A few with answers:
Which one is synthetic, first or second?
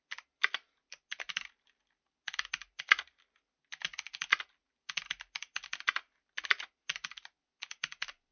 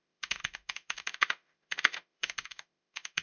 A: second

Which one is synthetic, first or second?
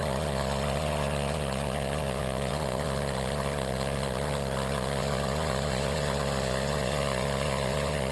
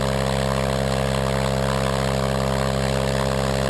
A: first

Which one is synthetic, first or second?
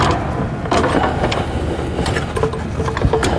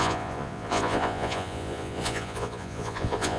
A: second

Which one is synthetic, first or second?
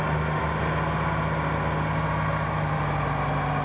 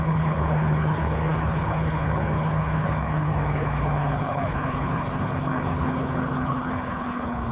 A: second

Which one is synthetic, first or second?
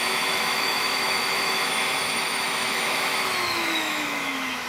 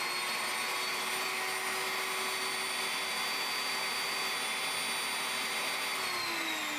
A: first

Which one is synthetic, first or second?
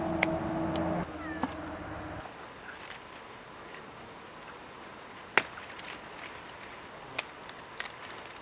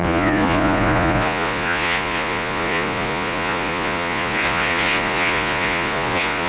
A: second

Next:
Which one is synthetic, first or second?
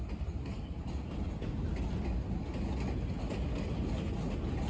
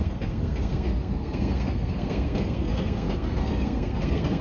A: second